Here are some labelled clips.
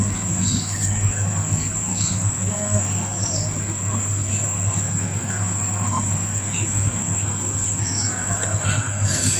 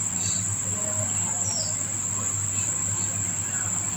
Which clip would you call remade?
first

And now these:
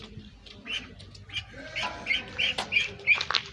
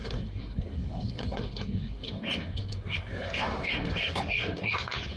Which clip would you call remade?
second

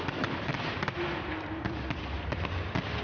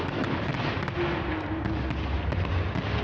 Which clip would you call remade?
first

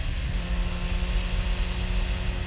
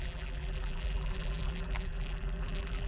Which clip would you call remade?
second